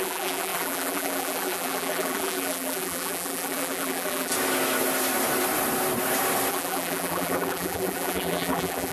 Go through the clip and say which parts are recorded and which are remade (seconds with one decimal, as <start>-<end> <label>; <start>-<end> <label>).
0.0-4.3 remade; 4.3-6.5 recorded; 6.5-8.9 remade